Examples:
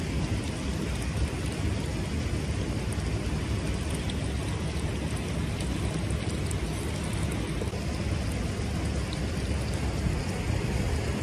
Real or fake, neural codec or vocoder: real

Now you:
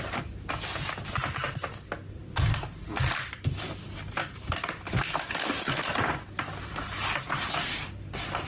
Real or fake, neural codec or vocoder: real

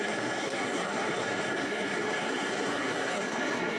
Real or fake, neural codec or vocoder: fake, codec, SNAC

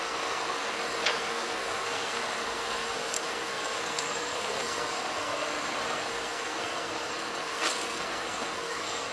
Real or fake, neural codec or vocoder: fake, codec, SNAC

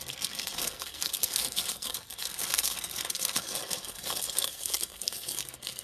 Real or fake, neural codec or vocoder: fake, codec, SNAC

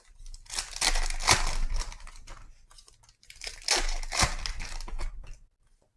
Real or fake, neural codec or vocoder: real